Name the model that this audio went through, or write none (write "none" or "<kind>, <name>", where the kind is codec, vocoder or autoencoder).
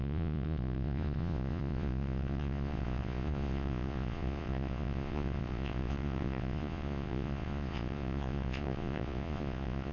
vocoder, Vocos